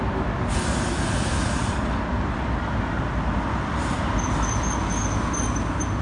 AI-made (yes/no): no